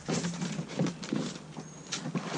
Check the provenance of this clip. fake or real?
real